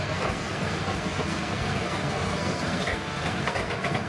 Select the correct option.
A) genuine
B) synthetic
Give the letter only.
B